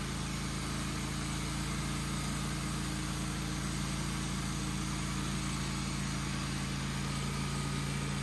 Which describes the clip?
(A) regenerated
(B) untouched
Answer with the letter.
B